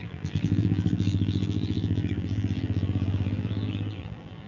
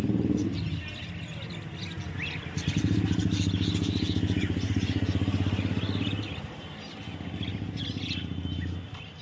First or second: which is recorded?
second